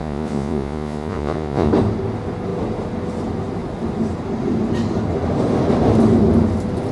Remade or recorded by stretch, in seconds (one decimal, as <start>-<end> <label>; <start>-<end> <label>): 0.0-1.7 remade; 1.7-6.9 recorded